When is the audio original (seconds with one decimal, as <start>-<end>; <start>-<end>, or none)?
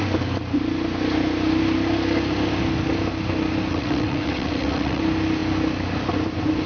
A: 0.0-3.7; 5.0-6.7